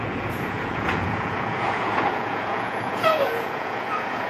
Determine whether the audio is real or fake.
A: fake